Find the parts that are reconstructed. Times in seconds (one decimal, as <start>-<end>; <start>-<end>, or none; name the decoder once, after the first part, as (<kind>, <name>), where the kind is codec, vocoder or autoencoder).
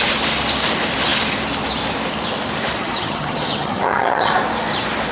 2.8-4.3 (vocoder, HiFi-GAN)